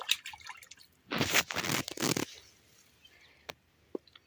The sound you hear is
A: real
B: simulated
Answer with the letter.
A